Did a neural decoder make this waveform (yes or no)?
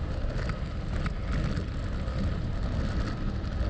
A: no